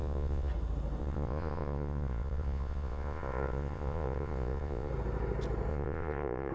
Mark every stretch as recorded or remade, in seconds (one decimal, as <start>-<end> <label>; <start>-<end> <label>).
0.0-0.5 remade; 0.5-1.0 recorded; 1.0-4.9 remade; 4.9-5.7 recorded; 5.7-6.5 remade

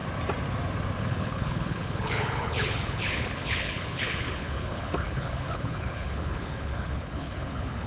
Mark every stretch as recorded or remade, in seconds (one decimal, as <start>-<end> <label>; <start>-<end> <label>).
0.0-1.0 recorded; 1.0-7.9 remade

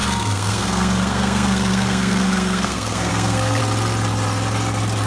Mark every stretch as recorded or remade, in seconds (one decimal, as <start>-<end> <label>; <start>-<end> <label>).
0.0-3.6 remade; 3.6-5.1 recorded